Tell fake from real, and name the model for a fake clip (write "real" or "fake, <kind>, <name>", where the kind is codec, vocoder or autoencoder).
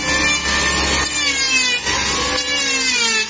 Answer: real